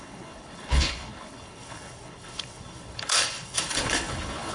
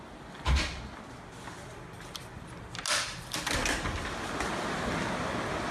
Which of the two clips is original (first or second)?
second